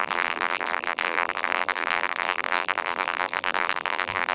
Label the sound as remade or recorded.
remade